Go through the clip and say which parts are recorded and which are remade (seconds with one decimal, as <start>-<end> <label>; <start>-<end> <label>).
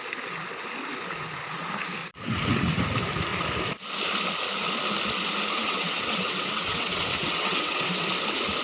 0.0-2.0 recorded; 2.0-2.8 remade; 2.8-5.5 recorded; 5.5-7.9 remade; 7.9-8.6 recorded